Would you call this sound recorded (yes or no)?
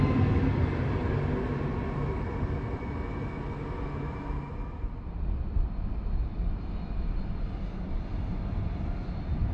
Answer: yes